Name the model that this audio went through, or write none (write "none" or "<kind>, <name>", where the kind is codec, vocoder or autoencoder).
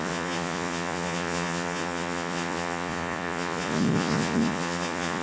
vocoder, Vocos